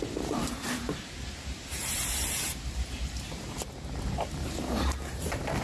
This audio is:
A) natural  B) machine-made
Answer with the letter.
B